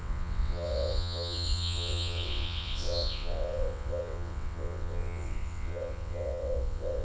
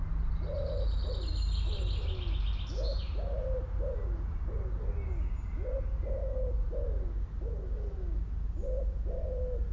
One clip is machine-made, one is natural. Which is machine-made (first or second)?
first